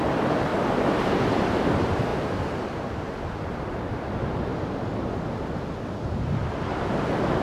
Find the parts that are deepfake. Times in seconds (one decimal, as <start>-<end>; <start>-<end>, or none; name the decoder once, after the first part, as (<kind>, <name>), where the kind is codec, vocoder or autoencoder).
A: 0.5-1.3 (vocoder, BigVGAN v2); 2.1-3.7